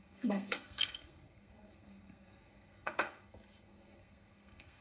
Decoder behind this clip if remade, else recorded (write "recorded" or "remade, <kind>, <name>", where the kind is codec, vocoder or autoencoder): remade, codec, SNAC